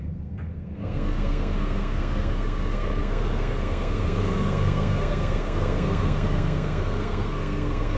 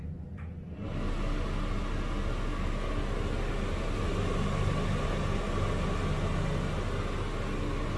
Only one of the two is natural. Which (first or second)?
second